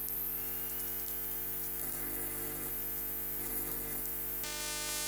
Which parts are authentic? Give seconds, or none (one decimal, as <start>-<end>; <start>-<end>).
0.0-1.8; 2.7-3.4; 4.0-5.1